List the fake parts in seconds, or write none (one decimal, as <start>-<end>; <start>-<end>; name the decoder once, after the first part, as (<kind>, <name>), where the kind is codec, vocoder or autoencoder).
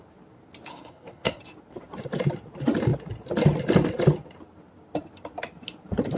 0.7-1.4 (codec, SNAC)